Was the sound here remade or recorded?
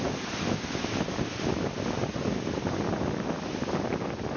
recorded